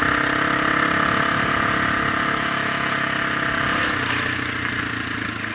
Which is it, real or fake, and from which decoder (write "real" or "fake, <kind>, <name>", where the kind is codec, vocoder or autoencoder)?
real